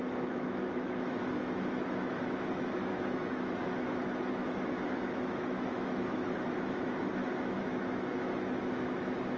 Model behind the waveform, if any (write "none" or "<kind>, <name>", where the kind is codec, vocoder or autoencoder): autoencoder, DAC-VAE